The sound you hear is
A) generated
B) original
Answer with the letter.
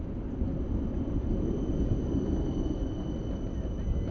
B